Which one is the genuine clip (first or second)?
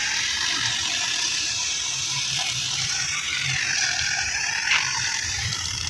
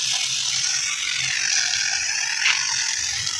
second